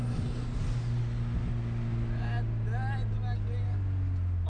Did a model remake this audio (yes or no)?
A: no